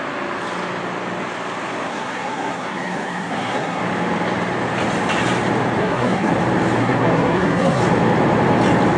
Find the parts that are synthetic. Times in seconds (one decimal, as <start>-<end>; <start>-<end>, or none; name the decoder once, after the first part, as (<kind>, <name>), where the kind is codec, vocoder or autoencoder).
1.9-3.8 (codec, SNAC); 5.8-6.3; 6.8-7.8